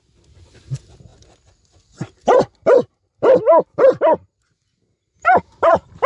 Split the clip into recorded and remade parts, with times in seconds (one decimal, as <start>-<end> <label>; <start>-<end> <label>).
0.0-6.1 recorded